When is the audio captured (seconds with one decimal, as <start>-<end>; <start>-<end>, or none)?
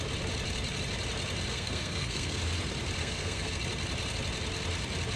0.0-1.5; 2.4-3.0; 3.6-5.2